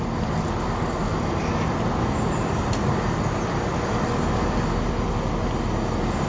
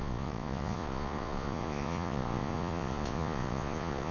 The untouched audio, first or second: first